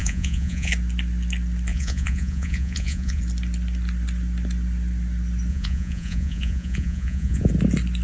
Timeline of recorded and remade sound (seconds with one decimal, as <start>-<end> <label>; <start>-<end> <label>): 0.0-0.7 remade; 0.7-1.7 recorded; 1.7-3.2 remade; 3.2-5.5 recorded; 5.5-7.5 remade; 7.5-8.0 recorded